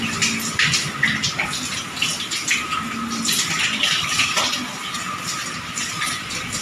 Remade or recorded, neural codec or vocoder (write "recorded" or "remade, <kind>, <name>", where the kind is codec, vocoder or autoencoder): recorded